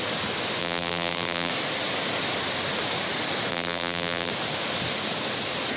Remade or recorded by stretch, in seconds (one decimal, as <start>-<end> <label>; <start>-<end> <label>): 0.0-0.6 recorded; 0.6-1.5 remade; 1.5-3.5 recorded; 3.5-4.3 remade; 4.3-5.8 recorded